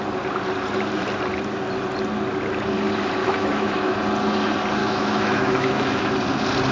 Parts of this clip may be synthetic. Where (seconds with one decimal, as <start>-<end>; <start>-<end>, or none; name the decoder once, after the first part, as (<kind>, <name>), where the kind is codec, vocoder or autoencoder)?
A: 3.2-3.9 (autoencoder, DAC-VAE); 4.8-6.1